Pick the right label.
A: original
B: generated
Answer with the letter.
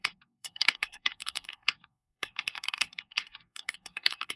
B